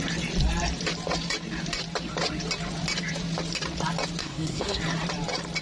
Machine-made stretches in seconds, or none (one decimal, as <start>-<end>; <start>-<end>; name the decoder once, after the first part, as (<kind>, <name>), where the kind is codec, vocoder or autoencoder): 4.2-4.8 (codec, SNAC)